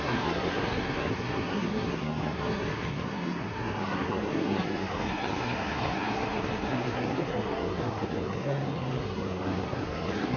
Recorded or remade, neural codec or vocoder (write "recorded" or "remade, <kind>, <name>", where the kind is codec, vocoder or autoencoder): remade, codec, SNAC